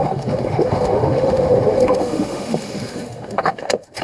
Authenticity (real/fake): fake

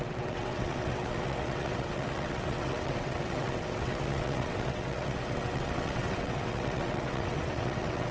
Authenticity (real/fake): fake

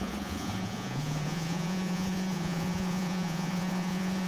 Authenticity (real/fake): fake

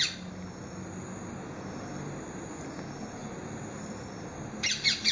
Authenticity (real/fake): real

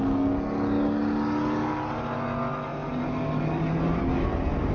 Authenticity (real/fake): real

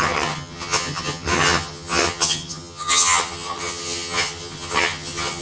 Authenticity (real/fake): fake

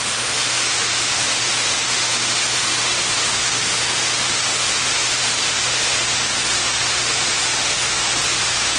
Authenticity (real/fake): fake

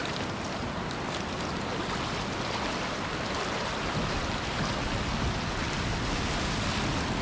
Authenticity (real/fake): real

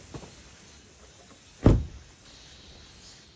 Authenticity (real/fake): real